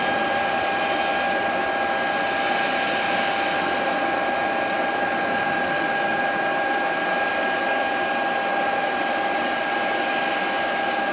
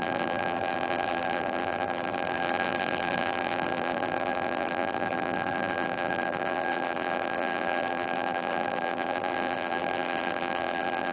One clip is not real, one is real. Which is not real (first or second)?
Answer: second